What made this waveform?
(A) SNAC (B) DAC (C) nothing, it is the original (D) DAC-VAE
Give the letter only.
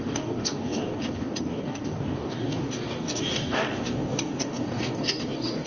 B